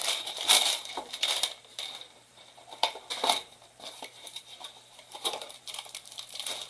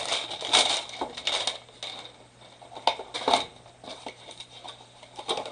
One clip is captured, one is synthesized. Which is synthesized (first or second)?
first